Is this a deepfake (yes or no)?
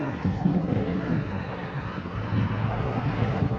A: yes